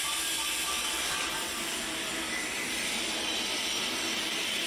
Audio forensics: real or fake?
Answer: fake